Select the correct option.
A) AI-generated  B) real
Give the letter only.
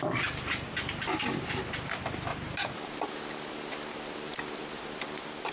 B